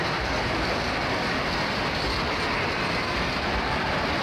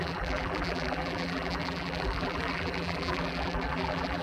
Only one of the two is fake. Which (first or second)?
second